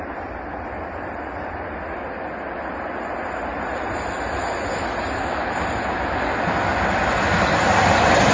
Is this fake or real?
real